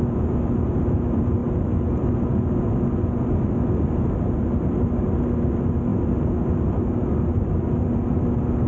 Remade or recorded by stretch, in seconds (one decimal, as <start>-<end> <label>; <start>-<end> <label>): 0.0-8.7 recorded